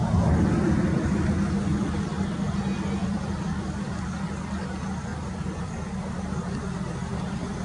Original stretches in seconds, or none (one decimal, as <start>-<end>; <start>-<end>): 0.0-3.0; 4.3-5.1; 6.2-7.6